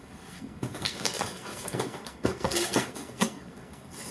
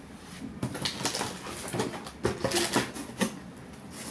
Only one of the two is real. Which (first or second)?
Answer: second